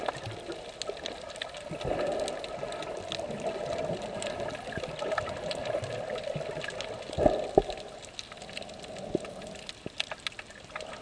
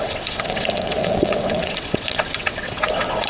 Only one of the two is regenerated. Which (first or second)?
second